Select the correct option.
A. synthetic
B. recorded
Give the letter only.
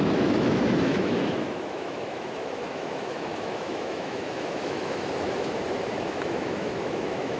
A